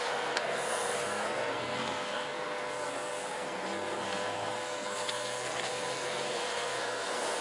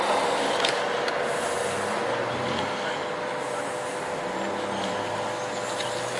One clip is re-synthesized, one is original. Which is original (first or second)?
second